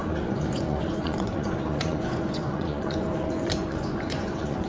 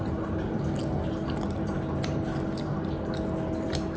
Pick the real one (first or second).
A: second